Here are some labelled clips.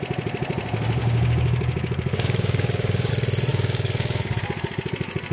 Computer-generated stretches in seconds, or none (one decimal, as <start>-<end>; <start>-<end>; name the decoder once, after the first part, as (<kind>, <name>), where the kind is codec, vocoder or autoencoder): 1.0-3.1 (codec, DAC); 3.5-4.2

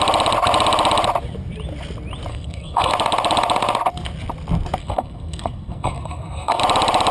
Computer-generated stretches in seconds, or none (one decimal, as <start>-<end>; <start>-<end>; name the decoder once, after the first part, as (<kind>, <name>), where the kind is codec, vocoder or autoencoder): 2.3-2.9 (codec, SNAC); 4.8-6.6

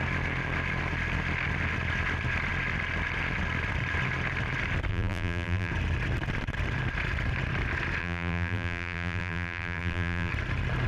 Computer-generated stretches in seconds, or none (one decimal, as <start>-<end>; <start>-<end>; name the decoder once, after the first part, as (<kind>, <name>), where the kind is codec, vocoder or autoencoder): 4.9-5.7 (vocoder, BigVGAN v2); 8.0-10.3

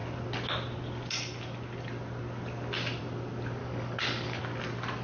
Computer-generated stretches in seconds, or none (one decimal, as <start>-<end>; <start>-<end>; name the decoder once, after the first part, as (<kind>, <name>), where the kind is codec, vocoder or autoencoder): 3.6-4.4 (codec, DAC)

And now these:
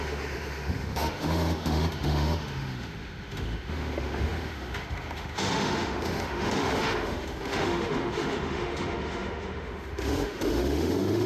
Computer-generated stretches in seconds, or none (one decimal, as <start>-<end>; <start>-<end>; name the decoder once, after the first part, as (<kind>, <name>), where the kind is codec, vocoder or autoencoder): 0.0-11.3 (autoencoder, DAC-VAE)

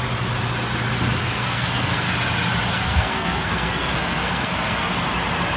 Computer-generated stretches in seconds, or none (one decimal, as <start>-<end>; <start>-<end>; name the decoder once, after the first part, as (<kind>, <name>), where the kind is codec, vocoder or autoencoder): 1.2-2.1 (codec, SNAC); 2.7-4.9

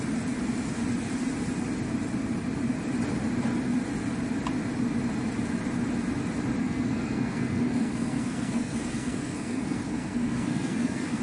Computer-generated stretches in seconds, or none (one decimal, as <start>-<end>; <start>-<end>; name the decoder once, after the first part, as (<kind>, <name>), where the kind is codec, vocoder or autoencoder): 6.6-11.2 (codec, SNAC)

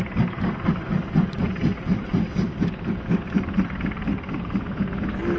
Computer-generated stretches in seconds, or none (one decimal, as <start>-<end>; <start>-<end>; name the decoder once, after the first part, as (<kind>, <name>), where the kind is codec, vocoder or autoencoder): none